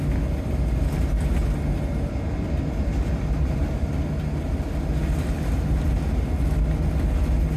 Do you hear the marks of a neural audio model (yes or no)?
no